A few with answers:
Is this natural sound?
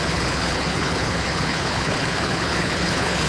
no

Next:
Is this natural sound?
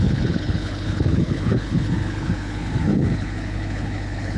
no